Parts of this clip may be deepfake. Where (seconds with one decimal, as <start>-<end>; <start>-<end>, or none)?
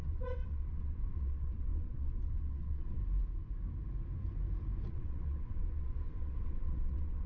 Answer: 0.0-3.0; 4.9-7.3